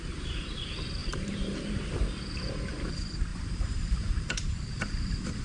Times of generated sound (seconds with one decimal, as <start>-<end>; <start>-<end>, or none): 1.0-1.8; 3.3-5.4